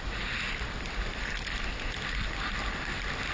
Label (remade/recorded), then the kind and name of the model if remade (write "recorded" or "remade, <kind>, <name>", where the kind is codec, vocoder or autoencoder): recorded